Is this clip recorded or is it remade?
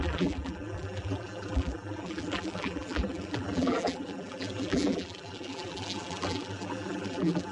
remade